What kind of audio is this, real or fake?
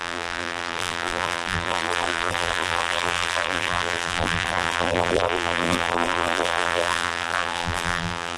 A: fake